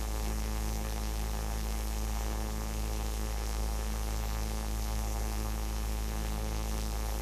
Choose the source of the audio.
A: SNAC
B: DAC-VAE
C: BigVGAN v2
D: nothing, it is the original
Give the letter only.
A